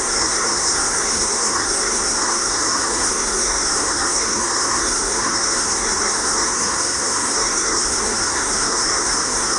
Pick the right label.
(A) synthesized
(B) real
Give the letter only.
A